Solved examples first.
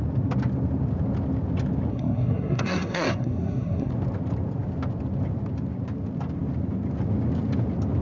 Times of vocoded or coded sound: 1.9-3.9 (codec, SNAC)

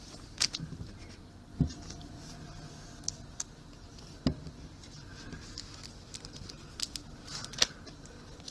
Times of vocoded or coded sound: none

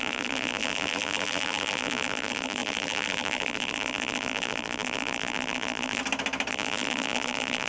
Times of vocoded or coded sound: 0.0-6.0 (vocoder, BigVGAN v2); 6.5-7.7